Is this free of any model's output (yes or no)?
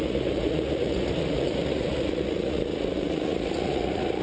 no